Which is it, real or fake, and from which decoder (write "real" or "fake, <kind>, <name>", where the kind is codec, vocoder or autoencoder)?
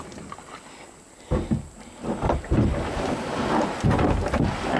real